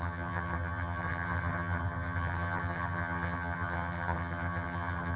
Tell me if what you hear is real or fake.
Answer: fake